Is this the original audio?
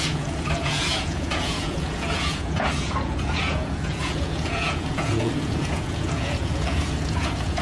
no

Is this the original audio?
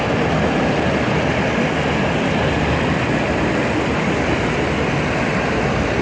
yes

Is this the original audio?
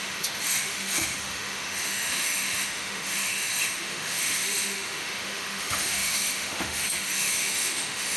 no